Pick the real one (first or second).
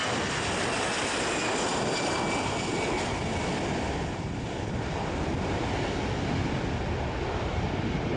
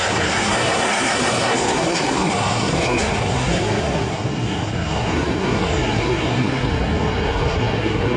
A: first